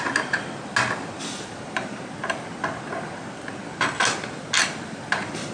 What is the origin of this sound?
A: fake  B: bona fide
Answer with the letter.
B